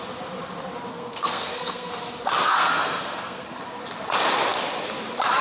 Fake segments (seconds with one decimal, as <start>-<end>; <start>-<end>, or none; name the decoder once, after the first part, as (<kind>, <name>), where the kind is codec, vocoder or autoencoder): 0.9-1.9 (codec, SNAC); 2.5-3.6